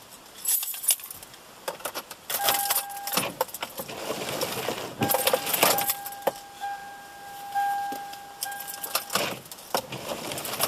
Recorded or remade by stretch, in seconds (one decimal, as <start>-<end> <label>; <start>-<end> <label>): 0.0-10.7 recorded